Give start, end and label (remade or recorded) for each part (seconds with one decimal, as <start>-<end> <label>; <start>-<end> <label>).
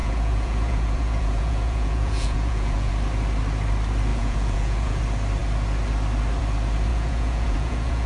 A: 0.0-2.9 remade; 2.9-4.1 recorded; 4.1-5.0 remade; 5.0-6.9 recorded; 6.9-8.1 remade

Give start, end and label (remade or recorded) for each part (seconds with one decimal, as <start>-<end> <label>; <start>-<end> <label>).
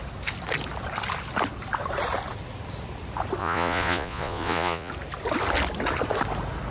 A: 0.0-3.4 recorded; 3.4-4.9 remade; 4.9-6.7 recorded